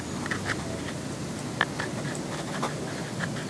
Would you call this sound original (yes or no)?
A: yes